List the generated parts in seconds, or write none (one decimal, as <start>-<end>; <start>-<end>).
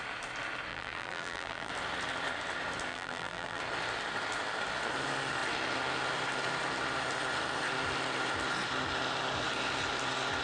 0.7-1.7; 2.9-3.6